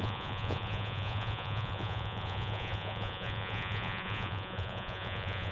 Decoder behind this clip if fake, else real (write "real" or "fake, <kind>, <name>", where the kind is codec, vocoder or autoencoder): fake, vocoder, Vocos